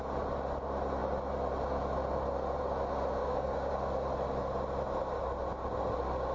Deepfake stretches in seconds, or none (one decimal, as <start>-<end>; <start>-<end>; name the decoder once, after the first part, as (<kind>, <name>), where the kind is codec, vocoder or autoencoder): 3.2-3.7 (codec, DAC)